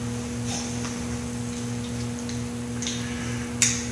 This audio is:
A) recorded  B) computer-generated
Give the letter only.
A